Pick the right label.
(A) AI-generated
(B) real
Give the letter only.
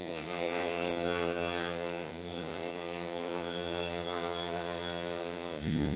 A